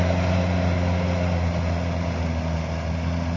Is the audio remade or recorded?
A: recorded